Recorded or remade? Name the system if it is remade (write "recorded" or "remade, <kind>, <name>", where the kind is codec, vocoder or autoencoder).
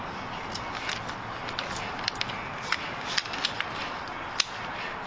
recorded